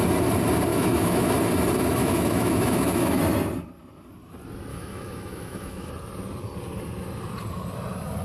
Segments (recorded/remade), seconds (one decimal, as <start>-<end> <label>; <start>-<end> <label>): 0.0-0.7 recorded; 0.7-1.3 remade; 1.3-2.0 recorded; 2.0-3.2 remade; 3.2-4.7 recorded; 4.7-5.9 remade; 5.9-8.2 recorded